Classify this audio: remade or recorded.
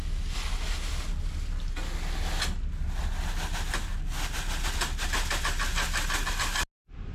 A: recorded